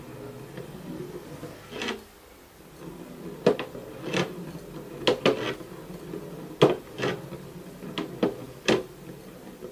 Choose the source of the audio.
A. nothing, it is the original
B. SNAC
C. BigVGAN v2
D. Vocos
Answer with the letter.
A